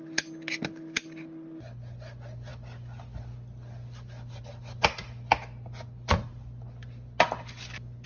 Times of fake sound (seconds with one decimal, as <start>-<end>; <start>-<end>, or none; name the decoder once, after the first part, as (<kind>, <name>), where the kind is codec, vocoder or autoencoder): none